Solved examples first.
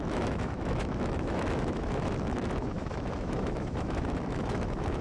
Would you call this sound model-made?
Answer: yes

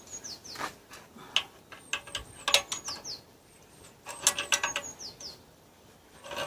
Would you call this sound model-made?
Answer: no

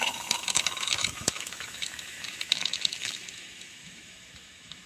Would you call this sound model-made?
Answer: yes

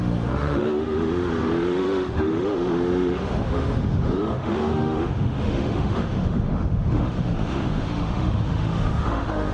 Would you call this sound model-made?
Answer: yes